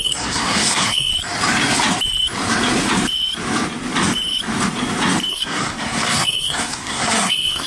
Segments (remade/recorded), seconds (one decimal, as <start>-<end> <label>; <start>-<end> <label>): 0.0-1.1 remade; 1.1-5.3 recorded; 5.3-7.7 remade